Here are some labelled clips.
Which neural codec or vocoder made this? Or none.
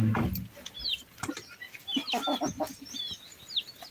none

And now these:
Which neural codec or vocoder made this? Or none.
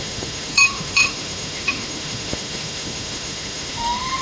autoencoder, DAC-VAE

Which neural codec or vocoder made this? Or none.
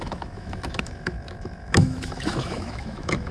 autoencoder, DAC-VAE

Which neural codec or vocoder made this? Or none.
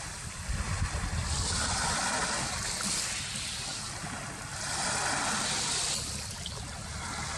none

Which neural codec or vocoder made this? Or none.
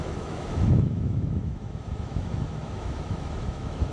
autoencoder, DAC-VAE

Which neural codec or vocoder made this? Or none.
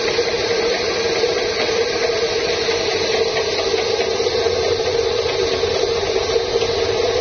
none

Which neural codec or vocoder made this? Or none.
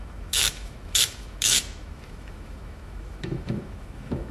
autoencoder, DAC-VAE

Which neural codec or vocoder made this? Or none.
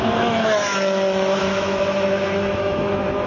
autoencoder, DAC-VAE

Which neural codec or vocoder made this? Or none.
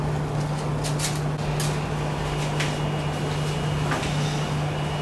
none